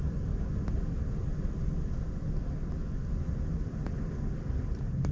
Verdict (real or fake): real